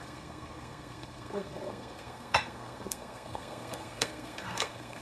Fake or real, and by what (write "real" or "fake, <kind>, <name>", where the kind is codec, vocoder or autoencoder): fake, codec, SNAC